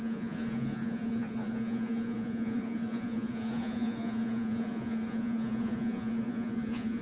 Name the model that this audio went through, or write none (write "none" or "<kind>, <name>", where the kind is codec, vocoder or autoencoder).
vocoder, Vocos